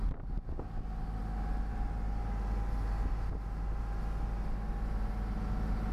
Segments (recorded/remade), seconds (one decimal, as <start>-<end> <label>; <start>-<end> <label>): 0.0-5.9 recorded